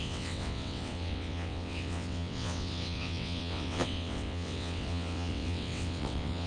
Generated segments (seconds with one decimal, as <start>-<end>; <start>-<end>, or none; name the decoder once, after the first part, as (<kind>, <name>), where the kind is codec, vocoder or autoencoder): 0.0-6.5 (vocoder, WaveNeXt)